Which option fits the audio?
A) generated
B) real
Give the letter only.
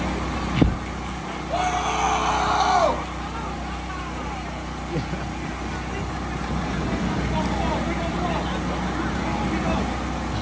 B